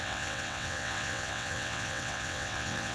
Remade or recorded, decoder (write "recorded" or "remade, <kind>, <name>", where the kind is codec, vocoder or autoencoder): remade, vocoder, WaveNeXt